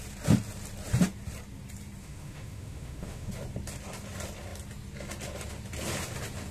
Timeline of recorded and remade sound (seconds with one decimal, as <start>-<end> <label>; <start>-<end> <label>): 0.0-2.0 recorded; 2.0-3.3 remade; 3.3-6.5 recorded